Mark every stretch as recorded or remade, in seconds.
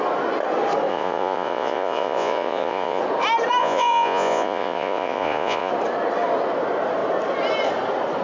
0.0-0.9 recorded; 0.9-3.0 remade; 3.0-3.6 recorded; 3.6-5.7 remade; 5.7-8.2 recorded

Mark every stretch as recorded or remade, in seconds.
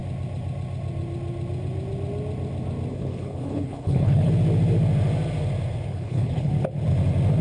0.0-2.9 recorded; 2.9-4.3 remade; 4.3-5.9 recorded; 5.9-6.5 remade; 6.5-7.4 recorded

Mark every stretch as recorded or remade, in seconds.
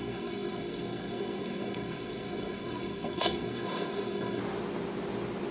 0.0-4.4 remade; 4.4-5.5 recorded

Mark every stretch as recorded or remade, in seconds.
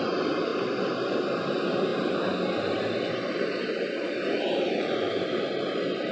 0.0-6.1 remade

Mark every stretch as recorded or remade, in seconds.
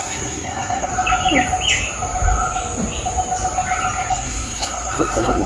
0.0-0.9 remade; 0.9-4.1 recorded; 4.1-5.5 remade